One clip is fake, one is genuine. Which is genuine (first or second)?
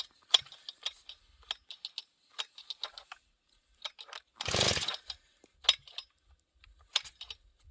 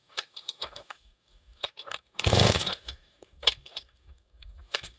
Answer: first